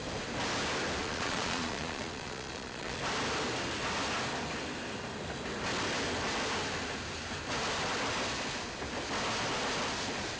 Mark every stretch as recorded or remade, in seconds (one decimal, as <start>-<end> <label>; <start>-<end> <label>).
0.0-1.0 recorded; 1.0-3.0 remade; 3.0-10.4 recorded